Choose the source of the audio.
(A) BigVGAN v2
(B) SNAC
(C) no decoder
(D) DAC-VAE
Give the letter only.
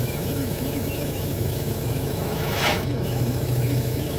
D